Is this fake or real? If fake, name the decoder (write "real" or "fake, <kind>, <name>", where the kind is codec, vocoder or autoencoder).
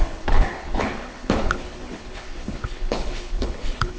fake, codec, HILCodec